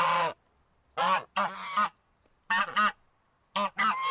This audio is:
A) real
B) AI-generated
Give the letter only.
A